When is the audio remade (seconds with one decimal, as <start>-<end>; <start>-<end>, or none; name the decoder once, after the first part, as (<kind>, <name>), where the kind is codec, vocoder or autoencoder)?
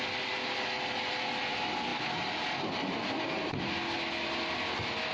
none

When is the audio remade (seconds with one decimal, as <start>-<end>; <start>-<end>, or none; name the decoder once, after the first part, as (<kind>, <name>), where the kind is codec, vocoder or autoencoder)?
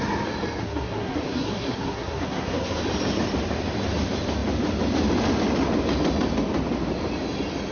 0.6-2.8 (codec, SNAC)